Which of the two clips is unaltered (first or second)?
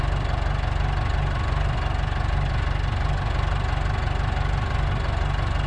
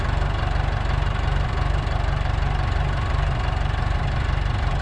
first